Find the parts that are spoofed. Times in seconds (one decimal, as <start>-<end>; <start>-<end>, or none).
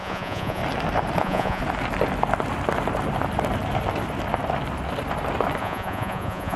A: 0.0-0.6; 1.2-1.6; 5.6-6.6